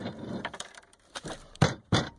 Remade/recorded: remade